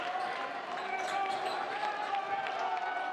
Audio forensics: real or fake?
real